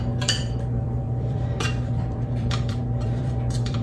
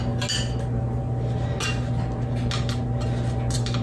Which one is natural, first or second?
second